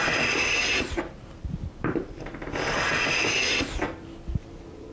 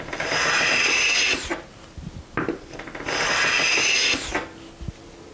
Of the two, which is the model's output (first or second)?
first